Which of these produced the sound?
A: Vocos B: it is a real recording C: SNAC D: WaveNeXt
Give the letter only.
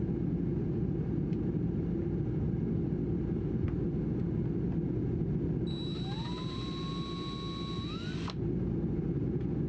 B